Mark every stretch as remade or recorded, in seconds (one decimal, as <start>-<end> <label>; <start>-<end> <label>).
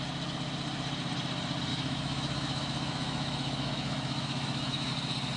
0.0-1.7 recorded; 1.7-4.9 remade; 4.9-5.4 recorded